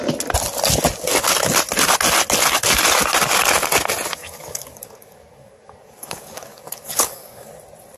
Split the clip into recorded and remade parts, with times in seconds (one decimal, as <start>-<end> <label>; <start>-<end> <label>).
0.0-4.2 recorded; 4.2-7.5 remade; 7.5-8.0 recorded